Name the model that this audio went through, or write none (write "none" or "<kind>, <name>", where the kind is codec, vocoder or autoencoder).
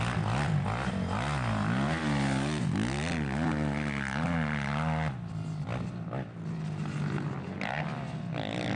none